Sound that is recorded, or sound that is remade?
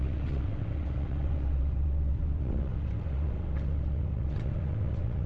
remade